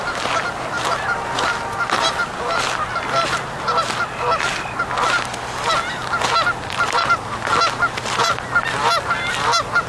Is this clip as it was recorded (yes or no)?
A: yes